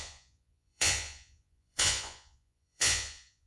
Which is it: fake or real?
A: fake